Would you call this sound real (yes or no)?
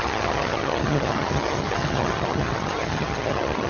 no